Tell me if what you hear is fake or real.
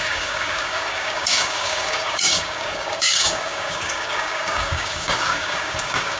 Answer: fake